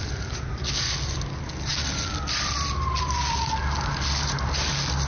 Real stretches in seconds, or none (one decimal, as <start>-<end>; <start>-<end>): 0.0-5.1